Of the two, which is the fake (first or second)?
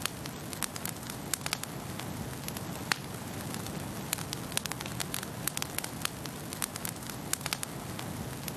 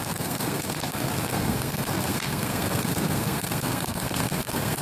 second